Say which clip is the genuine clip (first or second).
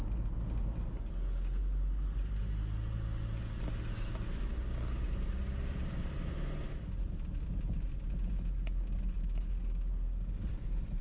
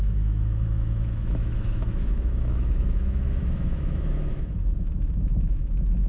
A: first